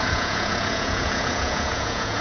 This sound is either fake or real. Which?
fake